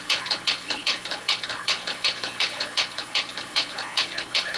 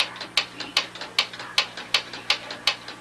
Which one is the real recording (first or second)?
second